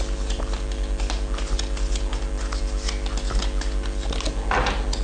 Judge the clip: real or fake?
real